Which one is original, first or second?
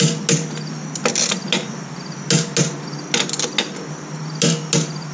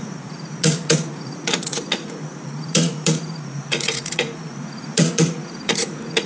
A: first